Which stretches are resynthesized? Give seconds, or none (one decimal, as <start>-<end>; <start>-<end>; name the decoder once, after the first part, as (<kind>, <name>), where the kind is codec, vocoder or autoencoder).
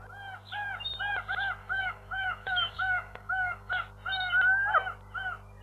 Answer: 1.6-3.7 (codec, DAC)